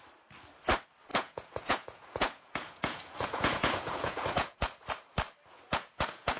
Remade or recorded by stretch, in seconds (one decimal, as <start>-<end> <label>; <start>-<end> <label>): 0.0-1.1 recorded; 1.1-4.9 remade; 4.9-5.5 recorded; 5.5-6.4 remade